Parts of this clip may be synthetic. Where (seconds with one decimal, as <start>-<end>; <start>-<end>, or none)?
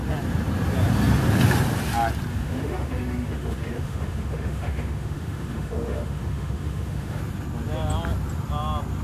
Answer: 2.3-7.2